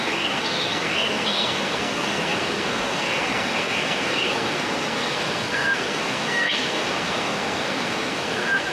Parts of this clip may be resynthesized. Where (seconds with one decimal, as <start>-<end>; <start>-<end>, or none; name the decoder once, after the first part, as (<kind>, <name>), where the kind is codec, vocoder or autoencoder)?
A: 0.0-8.7 (codec, SNAC)